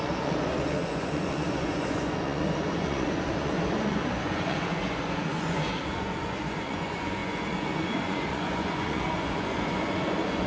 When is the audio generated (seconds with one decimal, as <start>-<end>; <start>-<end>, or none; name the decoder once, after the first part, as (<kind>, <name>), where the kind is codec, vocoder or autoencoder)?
0.0-10.5 (vocoder, Vocos)